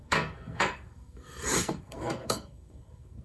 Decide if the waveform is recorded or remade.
remade